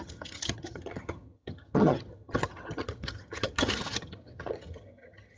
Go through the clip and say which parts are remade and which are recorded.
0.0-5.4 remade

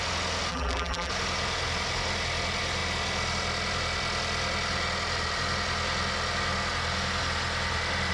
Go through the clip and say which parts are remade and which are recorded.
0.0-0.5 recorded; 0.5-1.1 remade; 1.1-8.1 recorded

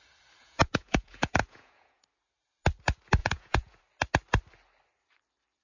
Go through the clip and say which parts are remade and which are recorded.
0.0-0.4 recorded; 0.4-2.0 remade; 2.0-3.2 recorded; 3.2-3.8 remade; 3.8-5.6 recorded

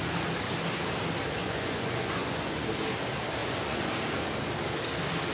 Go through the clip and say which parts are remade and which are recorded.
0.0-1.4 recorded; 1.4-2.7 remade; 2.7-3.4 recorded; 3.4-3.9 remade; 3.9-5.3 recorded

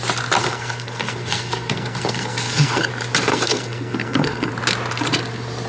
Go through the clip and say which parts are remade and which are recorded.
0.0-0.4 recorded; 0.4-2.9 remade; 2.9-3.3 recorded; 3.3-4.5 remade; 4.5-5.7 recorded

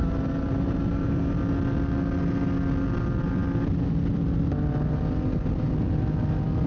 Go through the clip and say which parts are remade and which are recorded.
0.0-1.4 remade; 1.4-6.7 recorded

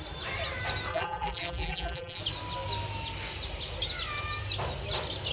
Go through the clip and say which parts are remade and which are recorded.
0.0-0.9 recorded; 0.9-2.2 remade; 2.2-5.3 recorded